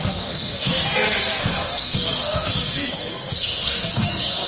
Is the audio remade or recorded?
remade